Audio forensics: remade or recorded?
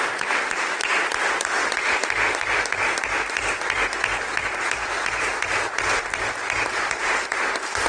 remade